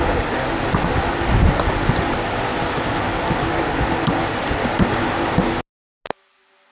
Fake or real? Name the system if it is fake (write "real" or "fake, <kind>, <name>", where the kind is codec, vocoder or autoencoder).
real